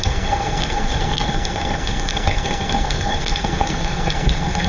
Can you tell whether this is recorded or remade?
remade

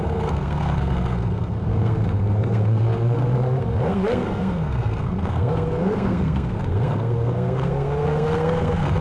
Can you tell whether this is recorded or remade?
remade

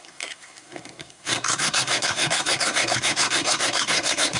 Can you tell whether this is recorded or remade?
remade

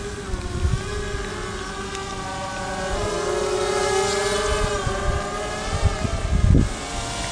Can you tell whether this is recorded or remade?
recorded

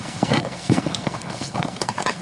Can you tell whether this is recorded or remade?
remade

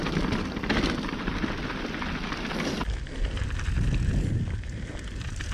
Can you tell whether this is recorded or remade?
recorded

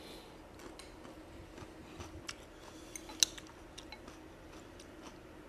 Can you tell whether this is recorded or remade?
recorded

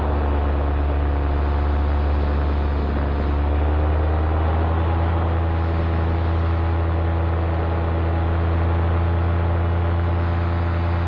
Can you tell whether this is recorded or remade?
recorded